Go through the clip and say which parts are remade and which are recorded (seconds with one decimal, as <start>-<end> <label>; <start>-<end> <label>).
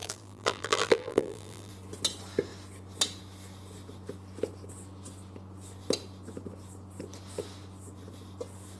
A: 0.0-1.7 remade; 1.7-8.8 recorded